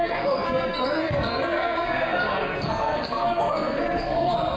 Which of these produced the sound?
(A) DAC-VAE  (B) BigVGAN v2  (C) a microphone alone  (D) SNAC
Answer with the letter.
D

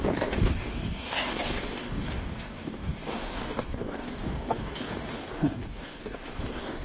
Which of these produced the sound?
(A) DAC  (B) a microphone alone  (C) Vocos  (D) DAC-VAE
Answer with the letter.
A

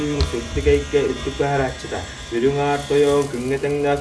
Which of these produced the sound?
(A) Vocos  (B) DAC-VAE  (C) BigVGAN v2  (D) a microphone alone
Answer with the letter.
D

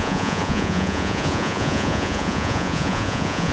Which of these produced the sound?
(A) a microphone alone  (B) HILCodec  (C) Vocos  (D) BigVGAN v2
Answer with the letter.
C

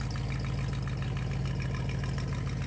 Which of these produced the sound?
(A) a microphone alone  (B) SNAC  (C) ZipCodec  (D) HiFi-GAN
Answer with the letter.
A